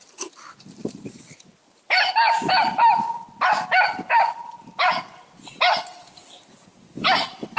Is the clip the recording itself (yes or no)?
yes